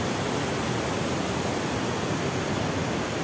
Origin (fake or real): real